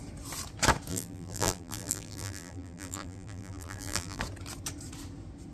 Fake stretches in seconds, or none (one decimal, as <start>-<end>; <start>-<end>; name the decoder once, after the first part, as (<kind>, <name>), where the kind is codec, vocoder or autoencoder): 0.9-4.2 (vocoder, BigVGAN v2)